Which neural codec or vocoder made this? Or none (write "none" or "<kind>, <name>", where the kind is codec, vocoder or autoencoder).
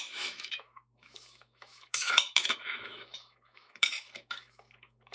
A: autoencoder, DAC-VAE